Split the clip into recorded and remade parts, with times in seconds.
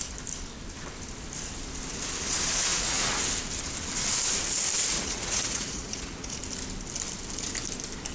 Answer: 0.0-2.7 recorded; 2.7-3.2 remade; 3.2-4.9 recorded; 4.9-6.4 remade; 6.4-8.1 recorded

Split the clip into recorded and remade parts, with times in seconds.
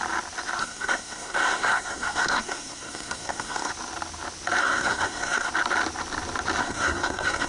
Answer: 0.0-0.6 recorded; 0.6-3.7 remade; 3.7-4.6 recorded; 4.6-5.5 remade; 5.5-6.6 recorded; 6.6-7.5 remade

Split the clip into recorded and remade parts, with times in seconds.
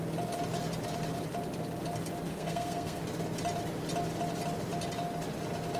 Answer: 0.0-2.3 recorded; 2.3-3.0 remade; 3.0-5.8 recorded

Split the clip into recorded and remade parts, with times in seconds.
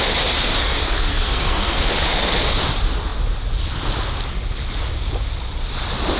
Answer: 0.0-0.6 recorded; 0.6-1.8 remade; 1.8-6.2 recorded